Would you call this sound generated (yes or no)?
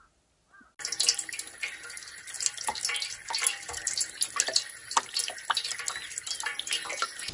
no